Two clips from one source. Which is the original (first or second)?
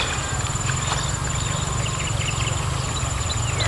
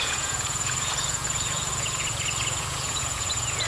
first